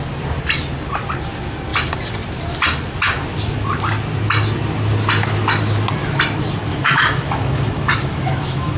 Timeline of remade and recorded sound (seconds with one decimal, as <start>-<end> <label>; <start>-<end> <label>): 0.0-6.7 recorded; 6.7-8.8 remade